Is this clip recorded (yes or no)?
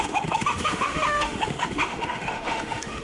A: no